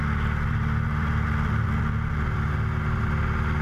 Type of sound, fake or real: real